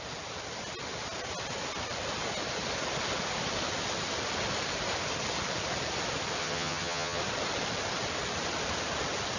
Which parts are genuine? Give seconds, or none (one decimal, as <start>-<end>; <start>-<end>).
0.0-6.4; 7.2-9.4